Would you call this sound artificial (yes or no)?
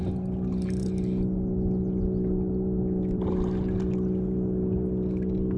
no